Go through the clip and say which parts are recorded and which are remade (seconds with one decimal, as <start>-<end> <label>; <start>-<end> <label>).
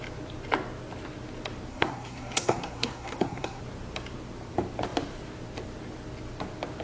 0.0-1.7 recorded; 1.7-3.6 remade; 3.6-6.8 recorded